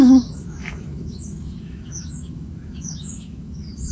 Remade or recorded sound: remade